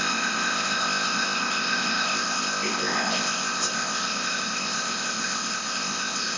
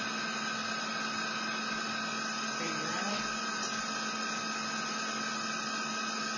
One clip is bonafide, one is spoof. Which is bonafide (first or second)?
second